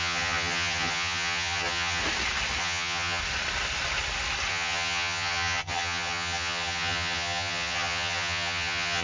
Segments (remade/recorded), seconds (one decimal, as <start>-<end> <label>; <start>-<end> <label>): 0.0-2.0 remade; 2.0-2.6 recorded; 2.6-3.2 remade; 3.2-4.5 recorded; 4.5-9.0 remade